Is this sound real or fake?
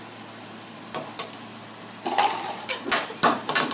real